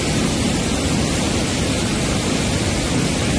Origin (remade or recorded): recorded